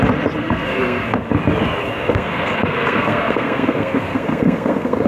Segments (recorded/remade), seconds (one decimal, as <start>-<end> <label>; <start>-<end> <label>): 0.0-0.4 recorded; 0.4-1.3 remade; 1.3-1.8 recorded; 1.8-5.1 remade